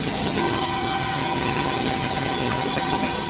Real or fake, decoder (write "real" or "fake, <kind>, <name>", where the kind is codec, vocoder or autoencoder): fake, vocoder, HiFi-GAN